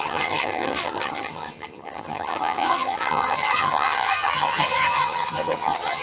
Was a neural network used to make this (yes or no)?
yes